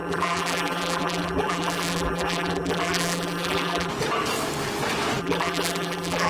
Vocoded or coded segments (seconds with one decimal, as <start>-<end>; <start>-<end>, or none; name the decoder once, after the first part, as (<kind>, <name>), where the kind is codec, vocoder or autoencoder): 0.0-3.9 (vocoder, BigVGAN v2); 5.2-6.3